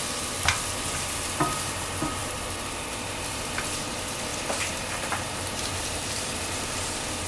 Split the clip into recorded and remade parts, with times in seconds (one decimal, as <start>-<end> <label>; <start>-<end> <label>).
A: 0.0-2.2 recorded; 2.2-3.4 remade; 3.4-4.3 recorded; 4.3-6.1 remade; 6.1-7.3 recorded